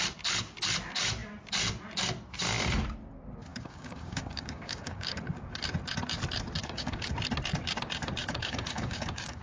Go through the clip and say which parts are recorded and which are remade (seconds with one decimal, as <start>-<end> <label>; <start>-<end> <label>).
0.0-3.5 recorded; 3.5-5.1 remade; 5.1-6.6 recorded; 6.6-7.1 remade; 7.1-8.2 recorded; 8.2-9.4 remade